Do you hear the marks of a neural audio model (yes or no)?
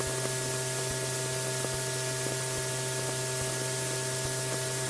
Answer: no